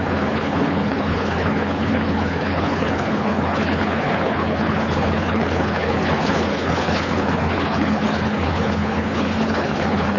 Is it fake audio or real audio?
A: fake